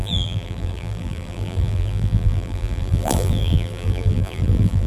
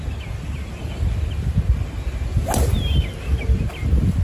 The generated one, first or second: first